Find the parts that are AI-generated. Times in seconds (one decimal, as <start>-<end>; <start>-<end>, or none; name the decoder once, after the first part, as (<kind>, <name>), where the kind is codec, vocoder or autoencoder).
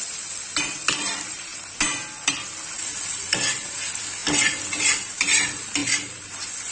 0.0-4.2 (vocoder, BigVGAN v2); 4.8-6.7